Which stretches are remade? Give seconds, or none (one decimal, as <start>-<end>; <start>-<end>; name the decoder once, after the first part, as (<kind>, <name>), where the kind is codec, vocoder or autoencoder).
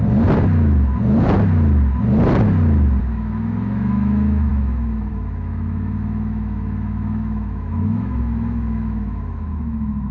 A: 3.0-10.1 (autoencoder, DAC-VAE)